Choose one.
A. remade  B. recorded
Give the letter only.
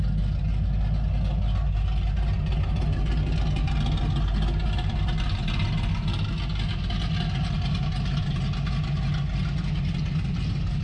B